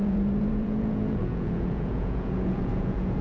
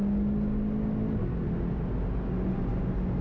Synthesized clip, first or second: first